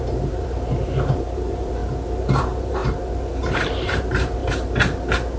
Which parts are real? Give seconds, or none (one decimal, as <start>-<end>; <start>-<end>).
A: 1.8-2.4; 2.8-3.4; 4.4-5.4